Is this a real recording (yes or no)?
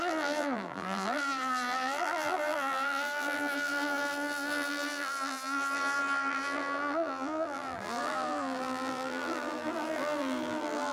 no